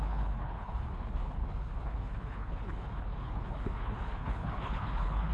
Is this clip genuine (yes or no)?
no